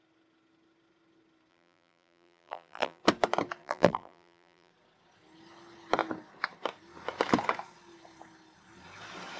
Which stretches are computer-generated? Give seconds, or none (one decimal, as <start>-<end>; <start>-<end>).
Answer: 1.5-3.0; 3.6-4.7